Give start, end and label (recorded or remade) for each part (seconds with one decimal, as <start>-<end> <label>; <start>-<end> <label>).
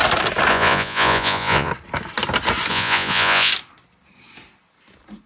0.0-0.5 recorded; 0.5-1.7 remade; 1.7-2.7 recorded; 2.7-3.5 remade; 3.5-5.3 recorded